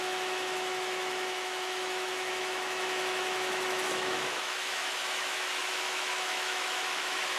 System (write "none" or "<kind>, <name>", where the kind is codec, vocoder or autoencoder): autoencoder, DAC-VAE